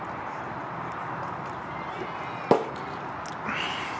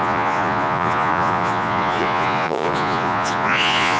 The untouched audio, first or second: first